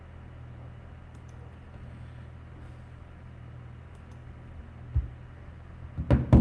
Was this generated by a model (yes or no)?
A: no